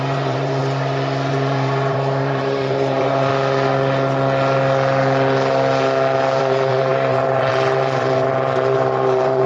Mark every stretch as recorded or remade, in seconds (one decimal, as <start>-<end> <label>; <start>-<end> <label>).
0.0-0.6 remade; 0.6-1.3 recorded; 1.3-3.3 remade; 3.3-6.4 recorded; 6.4-9.5 remade